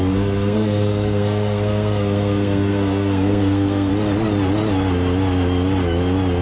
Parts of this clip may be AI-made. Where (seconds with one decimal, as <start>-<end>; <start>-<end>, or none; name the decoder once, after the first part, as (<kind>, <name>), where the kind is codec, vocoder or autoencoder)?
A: 0.0-3.9 (codec, SNAC)